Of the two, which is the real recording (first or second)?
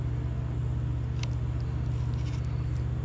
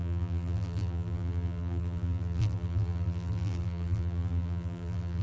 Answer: first